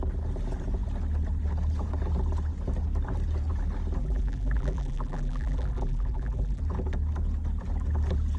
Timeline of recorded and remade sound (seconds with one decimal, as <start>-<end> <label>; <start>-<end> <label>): 0.0-4.0 recorded; 4.0-6.6 remade; 6.6-8.4 recorded